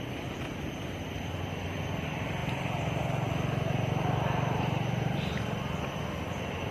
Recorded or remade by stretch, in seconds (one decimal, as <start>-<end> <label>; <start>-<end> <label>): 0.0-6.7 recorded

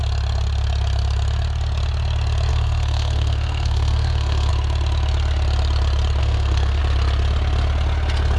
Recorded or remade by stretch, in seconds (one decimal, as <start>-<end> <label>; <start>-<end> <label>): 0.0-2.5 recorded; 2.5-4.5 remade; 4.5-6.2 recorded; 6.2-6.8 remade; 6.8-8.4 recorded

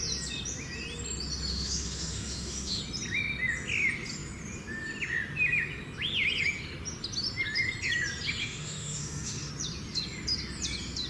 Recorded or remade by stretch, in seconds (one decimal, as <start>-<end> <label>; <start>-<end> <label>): 0.0-1.5 recorded; 1.5-2.8 remade; 2.8-8.4 recorded; 8.4-9.5 remade; 9.5-11.1 recorded

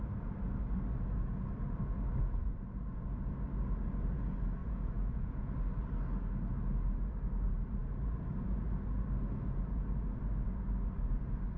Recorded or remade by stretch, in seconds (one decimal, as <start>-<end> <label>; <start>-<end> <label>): 0.0-4.6 recorded; 4.6-5.5 remade; 5.5-11.6 recorded

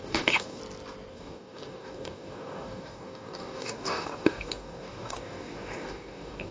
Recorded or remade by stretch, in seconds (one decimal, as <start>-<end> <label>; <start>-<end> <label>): 0.0-0.6 remade; 0.6-1.1 recorded; 1.1-6.5 remade

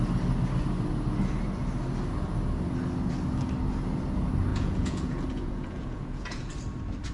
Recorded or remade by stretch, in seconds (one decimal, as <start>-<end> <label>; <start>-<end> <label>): 0.0-4.5 recorded; 4.5-6.5 remade; 6.5-7.1 recorded

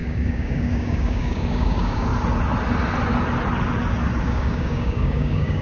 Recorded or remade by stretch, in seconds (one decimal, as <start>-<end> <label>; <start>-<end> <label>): 0.0-2.1 remade; 2.1-4.2 recorded; 4.2-5.6 remade

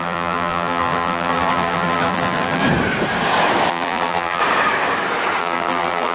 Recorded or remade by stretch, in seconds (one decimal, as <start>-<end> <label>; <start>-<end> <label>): 0.0-2.6 remade; 2.6-3.7 recorded; 3.7-4.4 remade; 4.4-5.4 recorded; 5.4-6.1 remade